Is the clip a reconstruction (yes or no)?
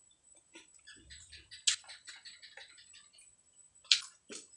no